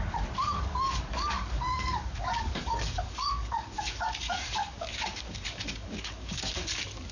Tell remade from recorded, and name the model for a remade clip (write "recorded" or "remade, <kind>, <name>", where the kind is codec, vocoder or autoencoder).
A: remade, codec, DAC